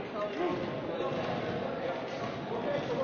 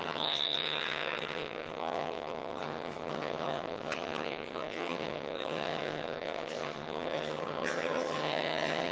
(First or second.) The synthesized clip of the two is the second